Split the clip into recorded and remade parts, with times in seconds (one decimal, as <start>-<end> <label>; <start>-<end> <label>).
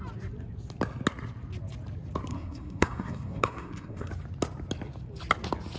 0.0-2.3 recorded; 2.3-4.1 remade; 4.1-5.8 recorded